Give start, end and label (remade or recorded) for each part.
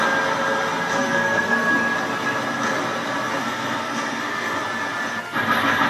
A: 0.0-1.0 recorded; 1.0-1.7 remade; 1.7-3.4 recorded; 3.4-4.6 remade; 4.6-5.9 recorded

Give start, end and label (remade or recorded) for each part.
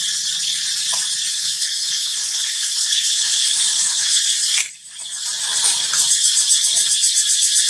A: 0.0-1.3 recorded; 1.3-4.2 remade; 4.2-7.7 recorded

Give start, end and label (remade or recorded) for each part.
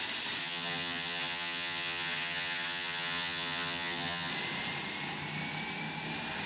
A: 0.0-0.4 recorded; 0.4-4.3 remade; 4.3-6.5 recorded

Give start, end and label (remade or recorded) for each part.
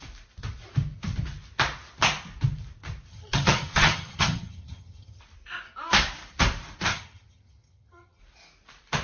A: 0.0-3.1 recorded; 3.1-5.2 remade; 5.2-6.9 recorded; 6.9-8.2 remade; 8.2-9.0 recorded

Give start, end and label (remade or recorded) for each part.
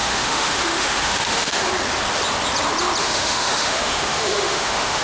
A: 0.0-1.7 remade; 1.7-3.0 recorded; 3.0-5.0 remade